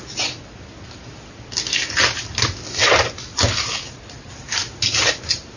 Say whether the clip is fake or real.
real